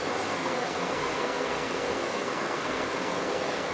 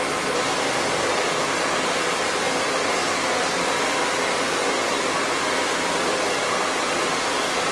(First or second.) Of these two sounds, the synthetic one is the first